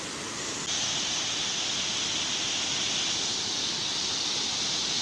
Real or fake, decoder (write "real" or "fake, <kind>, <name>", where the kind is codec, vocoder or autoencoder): real